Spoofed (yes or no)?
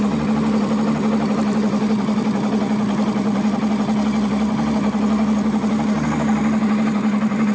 no